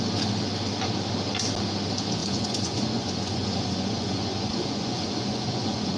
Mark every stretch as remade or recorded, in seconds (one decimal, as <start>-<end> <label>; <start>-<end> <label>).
0.0-2.2 recorded; 2.2-6.0 remade